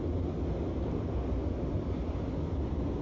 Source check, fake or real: real